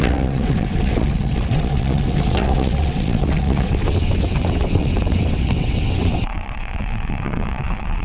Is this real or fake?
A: fake